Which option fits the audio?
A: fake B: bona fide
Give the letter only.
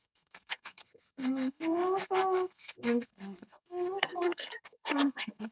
A